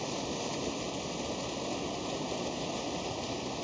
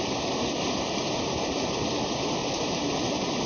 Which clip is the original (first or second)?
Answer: first